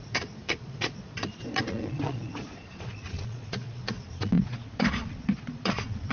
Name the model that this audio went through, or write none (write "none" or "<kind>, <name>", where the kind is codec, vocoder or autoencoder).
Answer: vocoder, Vocos